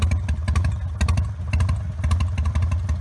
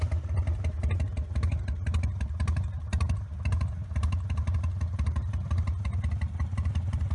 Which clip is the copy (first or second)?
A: second